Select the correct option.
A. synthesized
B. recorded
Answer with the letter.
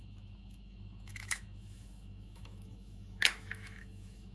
A